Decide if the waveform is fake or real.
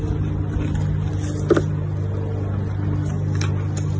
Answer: real